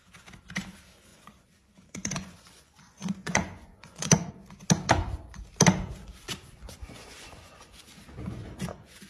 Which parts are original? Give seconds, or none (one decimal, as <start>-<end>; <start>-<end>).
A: 0.0-1.1; 4.3-6.8; 8.0-8.4